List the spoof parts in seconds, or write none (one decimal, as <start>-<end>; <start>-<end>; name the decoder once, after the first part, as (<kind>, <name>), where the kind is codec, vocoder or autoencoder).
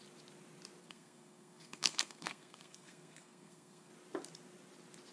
0.8-3.9 (codec, SNAC)